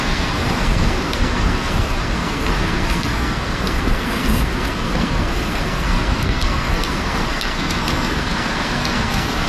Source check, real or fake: fake